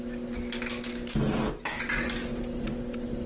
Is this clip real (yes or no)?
yes